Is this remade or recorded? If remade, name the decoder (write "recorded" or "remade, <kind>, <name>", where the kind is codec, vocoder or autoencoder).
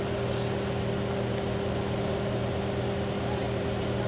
recorded